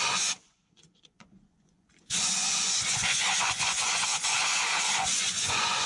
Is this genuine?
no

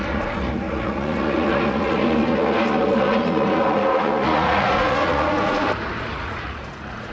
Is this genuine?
no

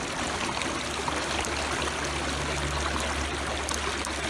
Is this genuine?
yes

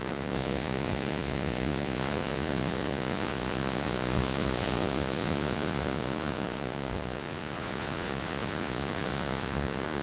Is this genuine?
no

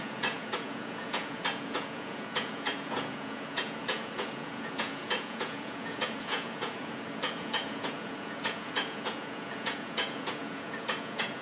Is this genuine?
no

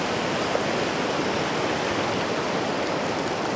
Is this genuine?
yes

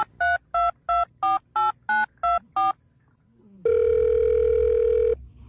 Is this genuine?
yes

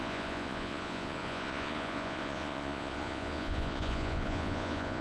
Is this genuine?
no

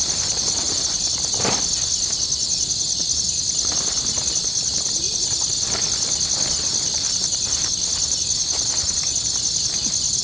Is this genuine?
yes